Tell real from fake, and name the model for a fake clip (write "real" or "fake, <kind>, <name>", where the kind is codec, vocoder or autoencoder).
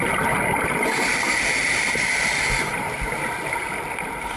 real